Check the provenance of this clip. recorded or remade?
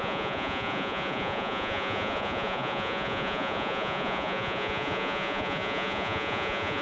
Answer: remade